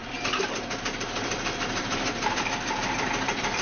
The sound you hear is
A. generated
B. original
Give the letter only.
A